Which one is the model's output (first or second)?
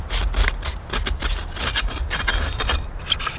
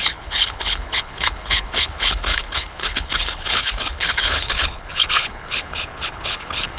second